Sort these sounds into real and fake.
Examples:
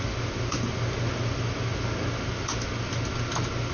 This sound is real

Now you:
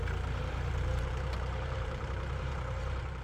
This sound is fake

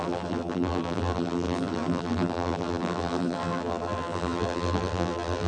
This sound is fake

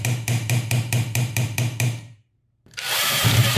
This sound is fake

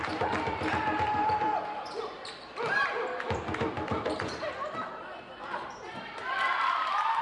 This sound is fake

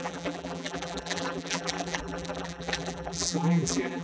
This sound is fake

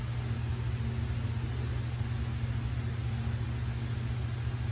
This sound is real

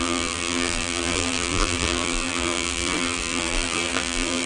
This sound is fake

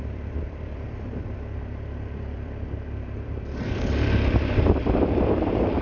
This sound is fake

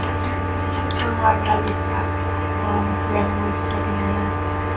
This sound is real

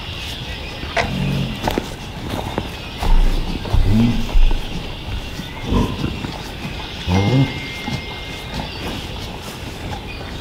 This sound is real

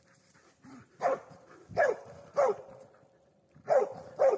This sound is fake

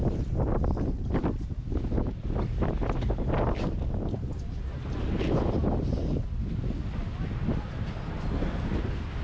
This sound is real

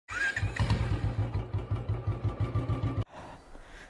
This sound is real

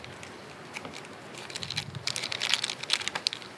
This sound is real